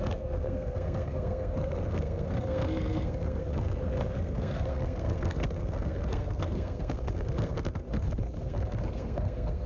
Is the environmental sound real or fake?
fake